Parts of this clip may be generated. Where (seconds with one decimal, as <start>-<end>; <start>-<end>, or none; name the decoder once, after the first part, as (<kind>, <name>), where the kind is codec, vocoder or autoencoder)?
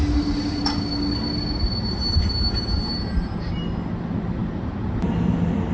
none